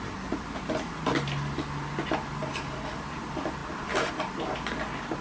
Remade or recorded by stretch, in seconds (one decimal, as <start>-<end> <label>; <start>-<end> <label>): 0.0-5.2 recorded